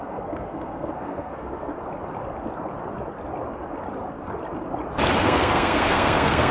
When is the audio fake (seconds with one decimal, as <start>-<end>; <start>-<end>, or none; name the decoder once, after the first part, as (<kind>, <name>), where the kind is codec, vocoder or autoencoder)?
0.0-1.7 (codec, SNAC); 5.2-6.5